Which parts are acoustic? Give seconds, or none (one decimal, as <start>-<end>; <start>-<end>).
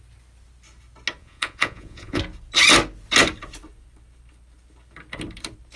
0.0-1.2; 2.2-5.8